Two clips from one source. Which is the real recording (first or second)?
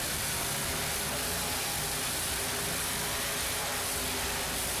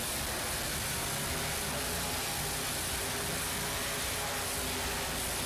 second